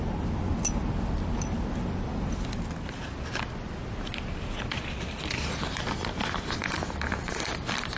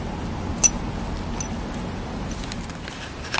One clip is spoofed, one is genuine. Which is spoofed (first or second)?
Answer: first